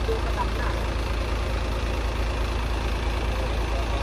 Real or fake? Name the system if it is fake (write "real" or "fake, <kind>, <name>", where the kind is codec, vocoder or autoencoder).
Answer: real